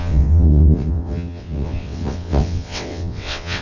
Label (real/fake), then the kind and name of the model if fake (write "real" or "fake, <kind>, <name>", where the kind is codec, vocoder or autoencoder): fake, vocoder, WaveNeXt